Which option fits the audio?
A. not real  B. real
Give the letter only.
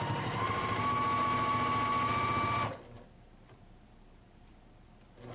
B